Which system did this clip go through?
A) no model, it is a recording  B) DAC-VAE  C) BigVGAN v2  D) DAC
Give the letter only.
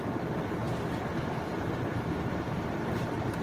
A